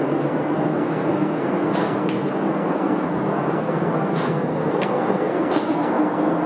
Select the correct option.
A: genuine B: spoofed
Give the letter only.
B